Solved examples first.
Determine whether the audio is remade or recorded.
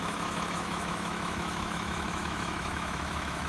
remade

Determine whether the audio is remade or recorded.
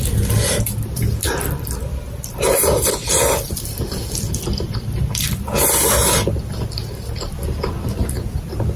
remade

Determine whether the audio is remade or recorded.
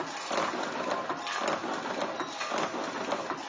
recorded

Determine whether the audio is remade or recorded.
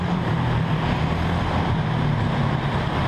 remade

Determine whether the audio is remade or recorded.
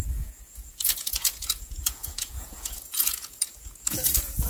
remade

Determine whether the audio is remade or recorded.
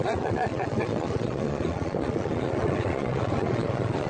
remade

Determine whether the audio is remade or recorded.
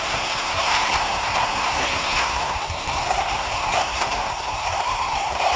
remade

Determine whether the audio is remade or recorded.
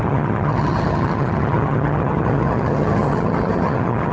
remade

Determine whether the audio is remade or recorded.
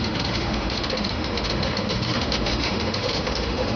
remade